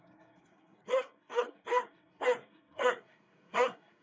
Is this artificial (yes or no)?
yes